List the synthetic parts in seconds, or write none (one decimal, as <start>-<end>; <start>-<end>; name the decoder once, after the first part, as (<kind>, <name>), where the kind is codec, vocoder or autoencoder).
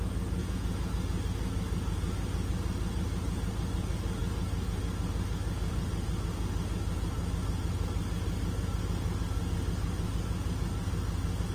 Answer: 0.4-0.9 (vocoder, Vocos)